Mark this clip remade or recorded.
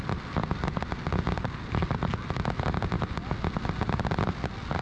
recorded